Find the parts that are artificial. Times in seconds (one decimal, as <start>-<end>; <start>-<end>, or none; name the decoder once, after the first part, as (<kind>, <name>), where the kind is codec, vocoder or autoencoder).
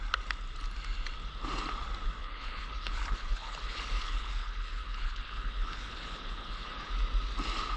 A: 2.2-6.9 (codec, HILCodec)